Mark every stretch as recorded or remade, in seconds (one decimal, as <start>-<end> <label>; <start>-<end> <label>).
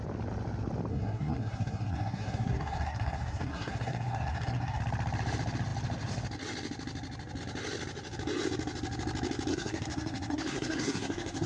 0.0-0.9 recorded; 0.9-4.8 remade; 4.8-9.5 recorded; 9.5-11.5 remade